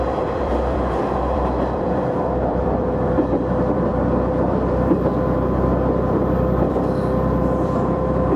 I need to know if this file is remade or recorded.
remade